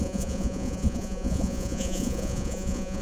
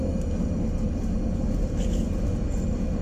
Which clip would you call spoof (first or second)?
first